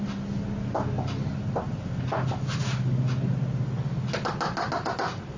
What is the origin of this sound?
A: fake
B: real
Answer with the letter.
B